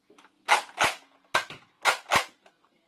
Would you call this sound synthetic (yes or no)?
no